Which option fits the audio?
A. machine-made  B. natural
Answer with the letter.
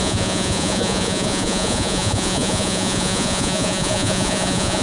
A